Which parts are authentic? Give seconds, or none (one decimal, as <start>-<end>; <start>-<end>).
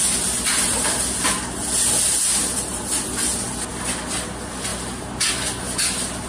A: 0.0-2.3; 3.8-6.3